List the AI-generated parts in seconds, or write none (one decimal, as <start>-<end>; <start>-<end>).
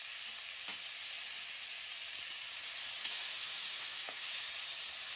3.0-4.5